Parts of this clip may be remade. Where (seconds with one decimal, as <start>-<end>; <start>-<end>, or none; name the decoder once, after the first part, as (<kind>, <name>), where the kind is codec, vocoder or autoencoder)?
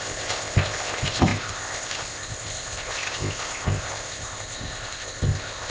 0.0-5.7 (codec, ZipCodec)